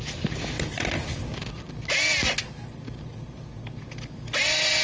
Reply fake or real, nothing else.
real